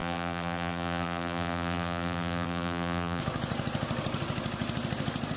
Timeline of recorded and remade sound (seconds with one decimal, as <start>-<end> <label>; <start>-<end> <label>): 0.0-3.2 remade; 3.2-5.4 recorded